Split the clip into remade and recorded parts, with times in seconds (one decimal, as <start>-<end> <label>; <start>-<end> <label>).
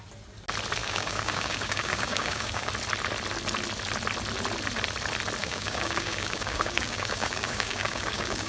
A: 0.0-0.8 recorded; 0.8-2.7 remade; 2.7-5.4 recorded; 5.4-8.5 remade